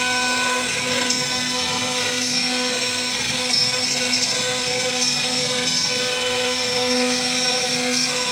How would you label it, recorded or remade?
remade